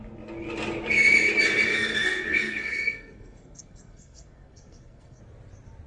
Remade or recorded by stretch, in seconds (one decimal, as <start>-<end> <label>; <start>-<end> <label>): 0.0-1.7 recorded; 1.7-5.2 remade; 5.2-5.9 recorded